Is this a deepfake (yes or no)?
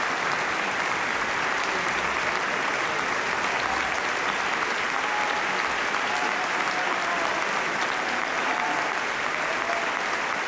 yes